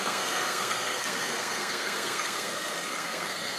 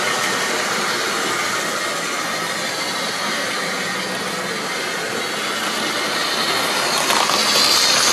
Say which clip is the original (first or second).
second